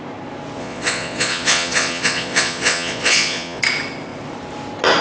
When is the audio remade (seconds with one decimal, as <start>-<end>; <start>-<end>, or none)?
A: 0.6-3.6